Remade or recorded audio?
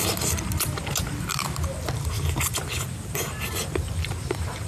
recorded